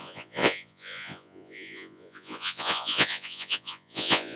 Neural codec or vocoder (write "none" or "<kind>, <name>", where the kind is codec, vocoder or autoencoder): vocoder, Vocos